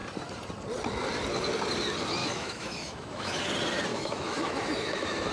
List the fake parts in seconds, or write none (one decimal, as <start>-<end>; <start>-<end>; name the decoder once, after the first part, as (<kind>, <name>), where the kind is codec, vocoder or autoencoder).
2.2-3.4 (autoencoder, DAC-VAE); 3.9-5.3